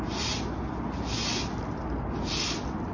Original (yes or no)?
yes